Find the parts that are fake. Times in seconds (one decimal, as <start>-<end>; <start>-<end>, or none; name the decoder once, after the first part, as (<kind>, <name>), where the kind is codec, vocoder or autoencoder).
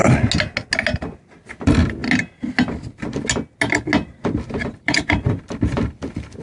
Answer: 1.5-2.0 (vocoder, BigVGAN v2); 4.7-6.4